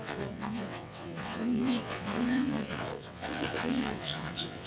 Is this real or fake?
fake